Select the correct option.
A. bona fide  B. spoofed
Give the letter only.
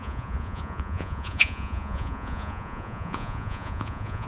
B